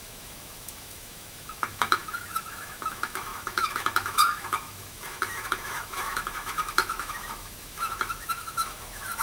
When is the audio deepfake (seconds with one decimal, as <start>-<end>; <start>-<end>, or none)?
0.0-9.2